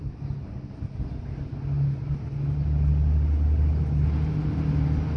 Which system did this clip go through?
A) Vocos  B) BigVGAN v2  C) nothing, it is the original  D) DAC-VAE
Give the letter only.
C